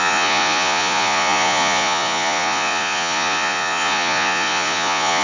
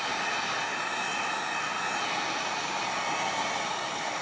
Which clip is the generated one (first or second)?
first